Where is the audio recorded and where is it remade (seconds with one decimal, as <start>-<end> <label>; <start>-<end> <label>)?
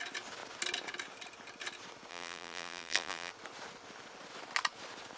0.0-2.1 recorded; 2.1-3.3 remade; 3.3-5.2 recorded